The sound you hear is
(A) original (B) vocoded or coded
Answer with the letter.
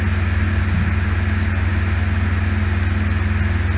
A